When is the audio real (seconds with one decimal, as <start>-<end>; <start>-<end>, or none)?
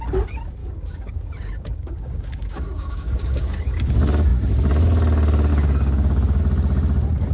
0.0-0.6; 3.9-5.5; 6.4-7.3